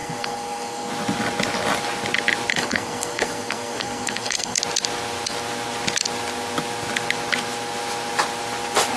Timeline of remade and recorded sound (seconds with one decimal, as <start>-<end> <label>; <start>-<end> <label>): 0.0-0.9 remade; 0.9-2.5 recorded; 2.5-4.6 remade; 4.6-9.0 recorded

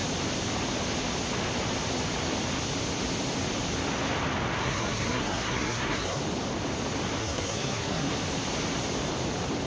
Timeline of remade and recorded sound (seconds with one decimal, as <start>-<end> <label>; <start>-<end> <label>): 0.0-4.6 recorded; 4.6-6.2 remade; 6.2-7.2 recorded; 7.2-8.1 remade; 8.1-9.7 recorded

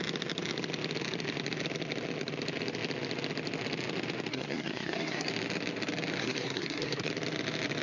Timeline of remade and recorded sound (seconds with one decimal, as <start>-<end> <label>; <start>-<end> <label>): 0.0-4.3 recorded; 4.3-5.3 remade; 5.3-6.2 recorded; 6.2-7.1 remade; 7.1-7.8 recorded